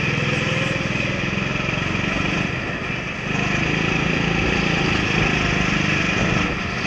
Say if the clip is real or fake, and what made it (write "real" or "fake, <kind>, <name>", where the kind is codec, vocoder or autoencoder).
real